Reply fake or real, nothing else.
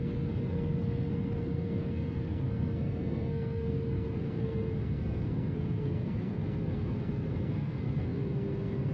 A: fake